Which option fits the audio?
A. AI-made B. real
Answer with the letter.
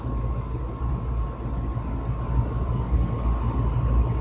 A